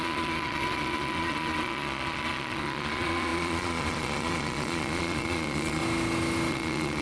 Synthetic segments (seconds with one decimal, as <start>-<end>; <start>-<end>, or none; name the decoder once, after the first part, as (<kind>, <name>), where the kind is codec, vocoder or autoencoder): 0.0-5.8 (vocoder, Vocos); 6.5-7.0